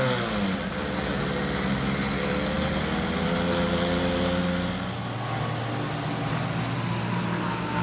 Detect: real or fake real